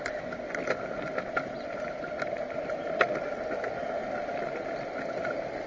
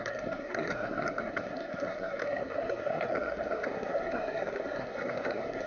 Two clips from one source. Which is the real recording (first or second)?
first